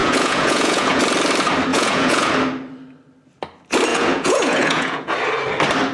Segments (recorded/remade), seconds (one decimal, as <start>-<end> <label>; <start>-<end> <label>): 0.0-1.0 remade; 1.0-1.7 recorded; 1.7-2.3 remade; 2.3-3.9 recorded; 3.9-5.1 remade; 5.1-5.9 recorded